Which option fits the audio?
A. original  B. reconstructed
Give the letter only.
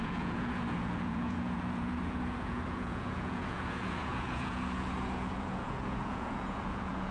B